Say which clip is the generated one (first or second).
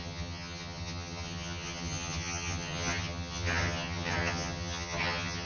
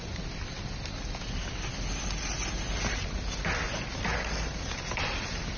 first